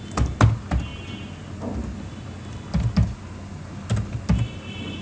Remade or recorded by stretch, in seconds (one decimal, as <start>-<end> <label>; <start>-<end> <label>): 0.0-5.0 recorded